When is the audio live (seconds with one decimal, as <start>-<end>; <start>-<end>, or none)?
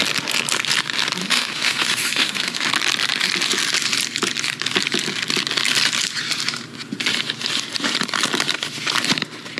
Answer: 0.0-1.2; 2.7-9.6